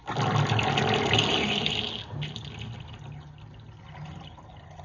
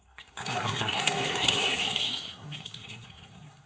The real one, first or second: first